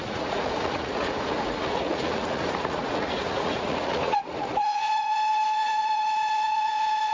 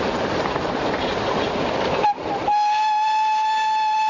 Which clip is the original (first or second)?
second